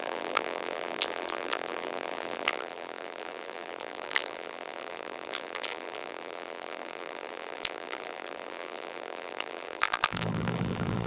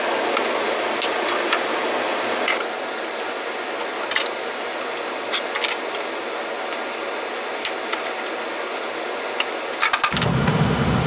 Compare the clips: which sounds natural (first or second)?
second